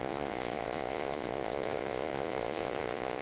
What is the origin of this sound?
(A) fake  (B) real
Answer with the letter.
A